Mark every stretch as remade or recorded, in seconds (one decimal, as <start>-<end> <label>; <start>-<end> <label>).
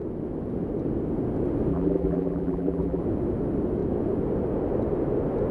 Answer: 0.0-1.7 recorded; 1.7-3.0 remade; 3.0-5.5 recorded